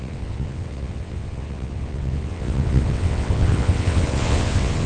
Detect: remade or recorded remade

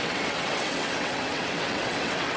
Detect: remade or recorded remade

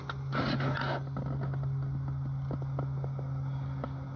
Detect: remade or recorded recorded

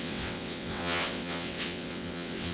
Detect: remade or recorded remade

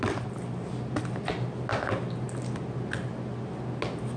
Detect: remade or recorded recorded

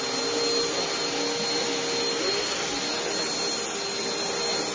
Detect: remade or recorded recorded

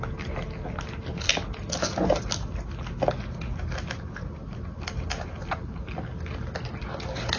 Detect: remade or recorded recorded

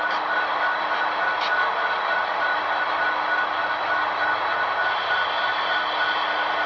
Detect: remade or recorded recorded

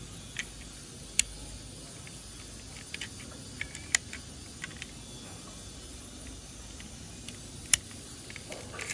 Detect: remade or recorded recorded